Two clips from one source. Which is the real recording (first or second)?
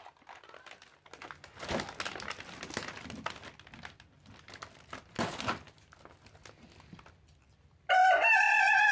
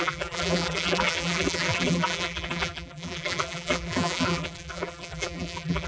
first